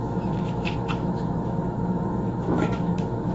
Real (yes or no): no